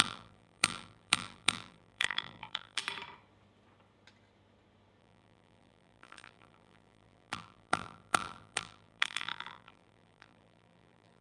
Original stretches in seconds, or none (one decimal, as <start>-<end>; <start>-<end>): 2.8-5.0